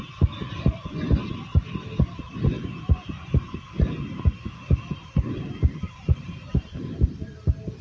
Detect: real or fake fake